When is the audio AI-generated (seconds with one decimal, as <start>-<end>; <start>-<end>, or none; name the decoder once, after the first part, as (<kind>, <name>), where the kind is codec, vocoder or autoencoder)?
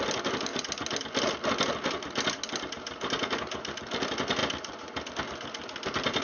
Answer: none